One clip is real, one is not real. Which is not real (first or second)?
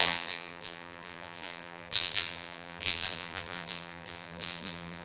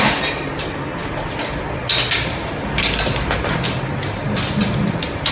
first